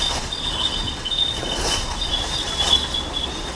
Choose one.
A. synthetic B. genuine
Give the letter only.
A